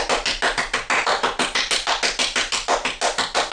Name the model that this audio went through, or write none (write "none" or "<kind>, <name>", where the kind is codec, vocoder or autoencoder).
none